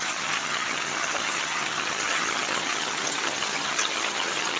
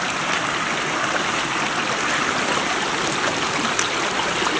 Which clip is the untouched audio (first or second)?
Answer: second